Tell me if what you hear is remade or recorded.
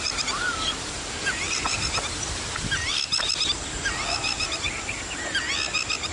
recorded